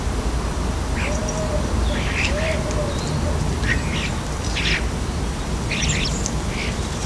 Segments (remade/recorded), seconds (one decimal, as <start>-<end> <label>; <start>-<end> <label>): 0.0-7.1 recorded